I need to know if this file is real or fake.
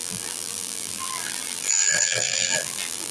fake